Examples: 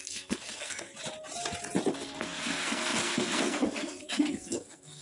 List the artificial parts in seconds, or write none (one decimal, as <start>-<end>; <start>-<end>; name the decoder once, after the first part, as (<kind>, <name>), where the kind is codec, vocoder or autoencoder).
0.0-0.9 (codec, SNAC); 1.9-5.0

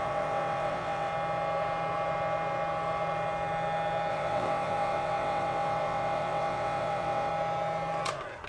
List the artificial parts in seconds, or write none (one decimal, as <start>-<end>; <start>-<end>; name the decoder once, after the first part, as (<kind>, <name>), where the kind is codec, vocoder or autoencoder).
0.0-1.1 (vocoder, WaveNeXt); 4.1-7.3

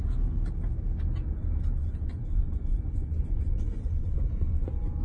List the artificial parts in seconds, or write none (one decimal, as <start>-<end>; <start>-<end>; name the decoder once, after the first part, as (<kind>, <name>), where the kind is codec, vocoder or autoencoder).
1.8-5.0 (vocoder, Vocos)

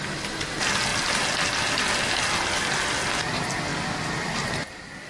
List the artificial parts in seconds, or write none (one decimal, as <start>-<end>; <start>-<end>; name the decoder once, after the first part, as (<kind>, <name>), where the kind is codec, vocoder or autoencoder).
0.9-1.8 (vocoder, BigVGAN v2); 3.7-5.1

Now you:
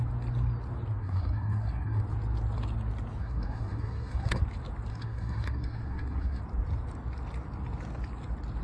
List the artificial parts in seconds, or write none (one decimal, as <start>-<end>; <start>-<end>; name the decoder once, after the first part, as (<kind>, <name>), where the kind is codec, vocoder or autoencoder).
1.0-2.0 (codec, SNAC); 3.2-4.4; 4.9-6.4

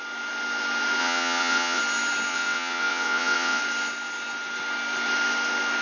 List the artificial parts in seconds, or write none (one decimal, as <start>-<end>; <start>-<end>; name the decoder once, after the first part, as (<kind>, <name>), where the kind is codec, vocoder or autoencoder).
1.0-1.8 (vocoder, WaveNeXt); 2.3-3.6